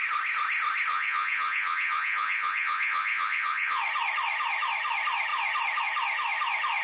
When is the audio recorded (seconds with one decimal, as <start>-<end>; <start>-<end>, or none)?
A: 0.0-0.9; 3.8-6.8

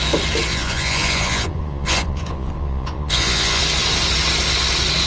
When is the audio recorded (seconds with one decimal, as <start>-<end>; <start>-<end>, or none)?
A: 0.0-0.5; 3.6-5.1

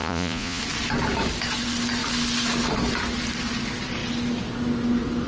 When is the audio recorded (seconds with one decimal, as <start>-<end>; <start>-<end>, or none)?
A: 0.6-5.3

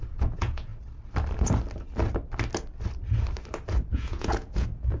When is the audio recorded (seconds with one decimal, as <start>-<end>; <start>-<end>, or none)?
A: 0.7-3.7

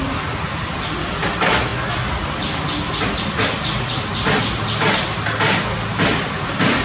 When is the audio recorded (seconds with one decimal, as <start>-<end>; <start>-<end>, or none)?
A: 0.0-6.8

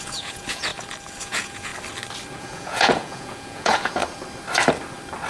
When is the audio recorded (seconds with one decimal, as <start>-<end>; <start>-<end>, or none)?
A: 0.7-1.2; 1.7-2.3; 4.0-5.3

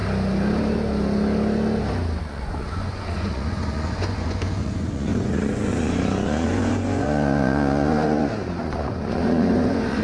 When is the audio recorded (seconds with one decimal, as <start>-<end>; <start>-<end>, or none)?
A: 0.0-2.2